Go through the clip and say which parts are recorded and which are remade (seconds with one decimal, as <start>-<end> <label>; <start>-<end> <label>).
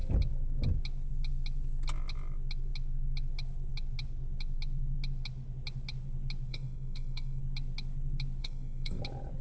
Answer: 0.0-6.5 recorded; 6.5-7.4 remade; 7.4-8.4 recorded; 8.4-9.0 remade; 9.0-9.4 recorded